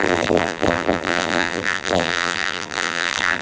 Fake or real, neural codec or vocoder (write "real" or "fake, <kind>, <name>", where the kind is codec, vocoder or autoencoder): fake, vocoder, BigVGAN v2